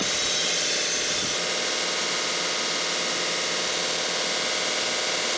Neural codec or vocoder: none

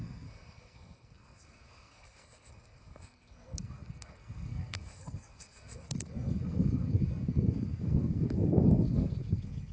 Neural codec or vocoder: codec, SNAC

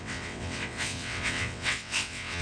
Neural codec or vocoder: vocoder, WaveNeXt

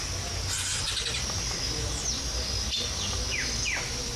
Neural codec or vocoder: none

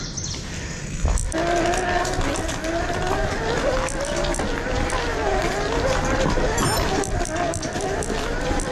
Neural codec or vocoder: none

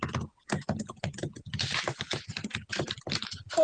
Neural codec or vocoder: none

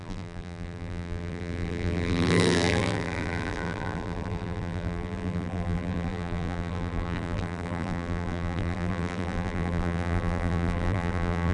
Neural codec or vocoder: vocoder, BigVGAN v2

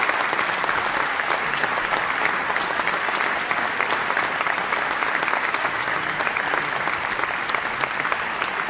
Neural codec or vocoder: none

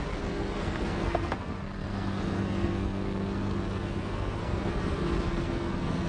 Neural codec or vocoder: codec, SNAC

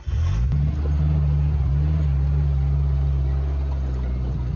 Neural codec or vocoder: none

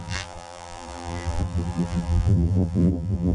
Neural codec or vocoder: vocoder, BigVGAN v2